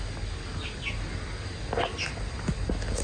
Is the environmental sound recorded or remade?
recorded